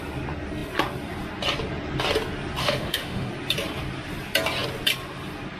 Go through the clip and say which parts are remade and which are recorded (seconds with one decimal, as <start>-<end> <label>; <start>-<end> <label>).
0.0-2.6 recorded; 2.6-3.3 remade; 3.3-5.6 recorded

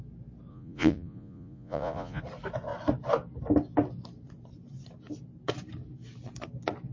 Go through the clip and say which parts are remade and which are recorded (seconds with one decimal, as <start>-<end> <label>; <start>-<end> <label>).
0.0-0.5 recorded; 0.5-2.2 remade; 2.2-6.9 recorded

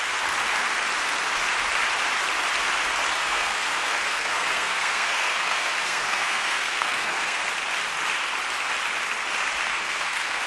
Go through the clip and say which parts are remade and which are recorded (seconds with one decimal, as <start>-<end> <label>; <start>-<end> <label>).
0.0-3.2 recorded; 3.2-7.4 remade; 7.4-9.7 recorded; 9.7-10.5 remade

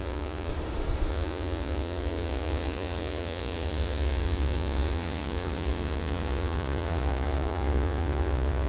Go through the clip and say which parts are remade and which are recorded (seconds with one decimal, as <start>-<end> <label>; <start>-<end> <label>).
0.0-0.5 remade; 0.5-1.1 recorded; 1.1-8.7 remade

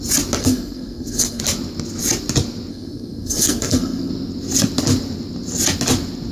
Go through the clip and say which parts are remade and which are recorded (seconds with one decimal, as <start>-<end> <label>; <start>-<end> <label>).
0.0-0.4 recorded; 0.4-1.4 remade; 1.4-2.7 recorded; 2.7-4.1 remade; 4.1-6.3 recorded

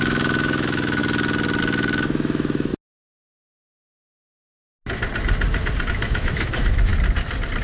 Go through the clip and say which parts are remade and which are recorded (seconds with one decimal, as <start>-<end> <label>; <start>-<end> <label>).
0.0-1.0 remade; 1.0-1.6 recorded; 1.6-2.7 remade; 2.7-5.9 recorded; 5.9-6.9 remade; 6.9-7.6 recorded

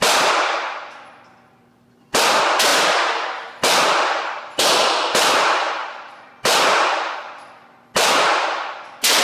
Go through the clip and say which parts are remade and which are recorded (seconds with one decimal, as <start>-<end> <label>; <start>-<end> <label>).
0.0-5.8 recorded; 5.8-6.3 remade; 6.3-9.2 recorded

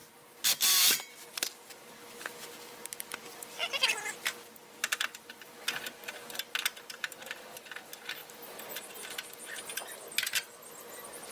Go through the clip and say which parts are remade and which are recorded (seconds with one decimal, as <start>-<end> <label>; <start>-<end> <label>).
0.0-11.3 recorded